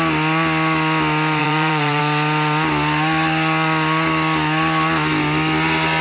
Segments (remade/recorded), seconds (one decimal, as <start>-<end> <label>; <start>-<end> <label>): 0.0-1.4 recorded; 1.4-2.0 remade; 2.0-6.0 recorded